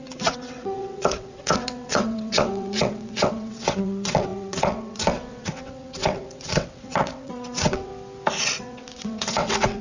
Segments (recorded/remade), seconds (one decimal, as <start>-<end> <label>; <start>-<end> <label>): 0.0-7.9 remade; 7.9-8.4 recorded; 8.4-9.8 remade